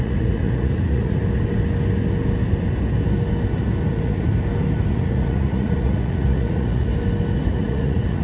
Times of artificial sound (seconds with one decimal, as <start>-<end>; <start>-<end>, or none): 0.0-1.2; 3.9-4.3; 4.9-6.9; 7.5-8.2

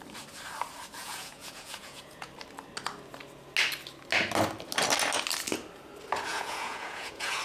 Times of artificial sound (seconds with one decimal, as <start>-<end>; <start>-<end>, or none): 1.0-2.3; 6.3-7.4